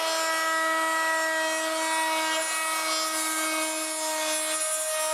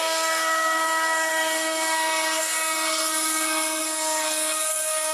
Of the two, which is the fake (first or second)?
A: second